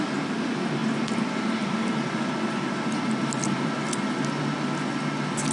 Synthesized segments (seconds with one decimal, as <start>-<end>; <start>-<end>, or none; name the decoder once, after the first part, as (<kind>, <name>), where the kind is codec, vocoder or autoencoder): none